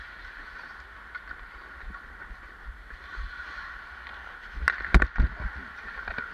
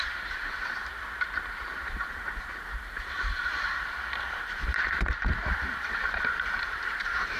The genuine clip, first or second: first